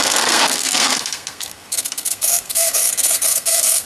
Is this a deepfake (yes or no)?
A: yes